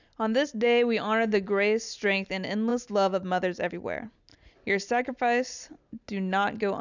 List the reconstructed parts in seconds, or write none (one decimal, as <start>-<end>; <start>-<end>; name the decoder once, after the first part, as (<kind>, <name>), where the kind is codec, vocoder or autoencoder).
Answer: none